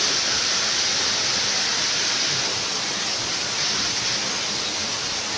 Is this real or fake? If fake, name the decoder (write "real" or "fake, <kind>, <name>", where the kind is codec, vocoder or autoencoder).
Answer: real